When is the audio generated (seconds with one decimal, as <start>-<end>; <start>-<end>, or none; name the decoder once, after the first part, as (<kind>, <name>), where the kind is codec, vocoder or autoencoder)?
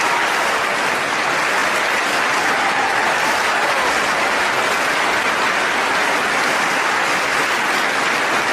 none